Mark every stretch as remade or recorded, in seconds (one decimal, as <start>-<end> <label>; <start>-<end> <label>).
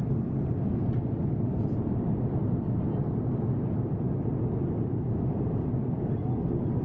0.0-6.8 recorded